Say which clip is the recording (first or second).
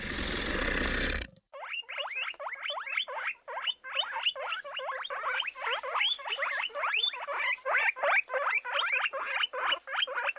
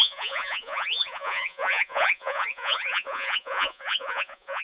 first